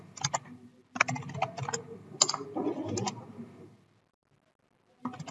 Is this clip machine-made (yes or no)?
no